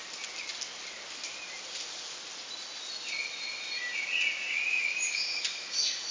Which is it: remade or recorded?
recorded